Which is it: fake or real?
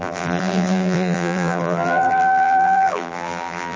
fake